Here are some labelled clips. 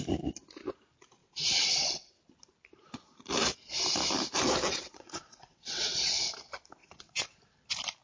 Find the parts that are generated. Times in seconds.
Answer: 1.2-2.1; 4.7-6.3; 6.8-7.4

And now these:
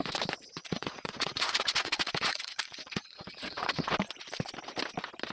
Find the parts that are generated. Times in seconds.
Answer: 0.6-3.8

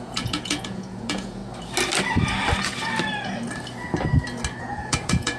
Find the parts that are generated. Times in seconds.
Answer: 0.0-1.4; 4.6-5.4

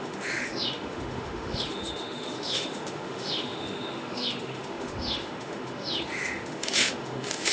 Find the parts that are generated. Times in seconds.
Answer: 0.0-7.5

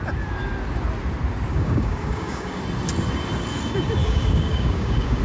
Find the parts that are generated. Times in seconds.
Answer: 1.5-2.6; 4.0-5.2

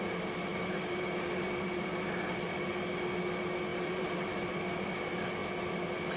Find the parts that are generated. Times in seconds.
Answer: 0.5-2.1; 3.7-4.5